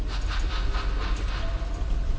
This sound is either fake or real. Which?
real